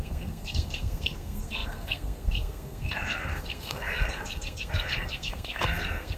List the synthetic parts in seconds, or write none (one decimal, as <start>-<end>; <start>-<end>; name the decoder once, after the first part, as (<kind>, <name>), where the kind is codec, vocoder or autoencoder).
0.0-6.2 (codec, SNAC)